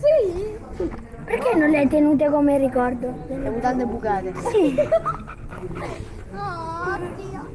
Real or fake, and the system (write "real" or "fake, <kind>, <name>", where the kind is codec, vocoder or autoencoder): real